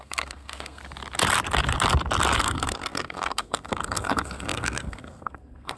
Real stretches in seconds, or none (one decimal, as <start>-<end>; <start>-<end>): 0.8-2.4